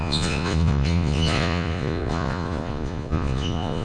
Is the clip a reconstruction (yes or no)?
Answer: yes